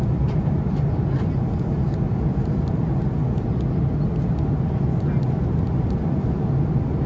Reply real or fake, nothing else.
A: real